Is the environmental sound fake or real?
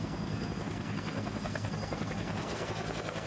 fake